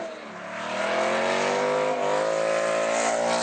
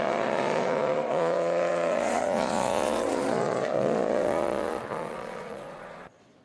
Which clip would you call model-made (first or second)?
second